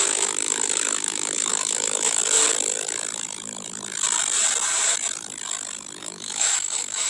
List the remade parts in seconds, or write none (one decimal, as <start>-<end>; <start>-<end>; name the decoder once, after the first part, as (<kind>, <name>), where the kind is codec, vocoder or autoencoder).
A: 0.0-2.2 (autoencoder, DAC-VAE); 6.0-7.1